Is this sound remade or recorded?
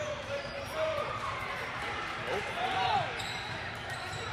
remade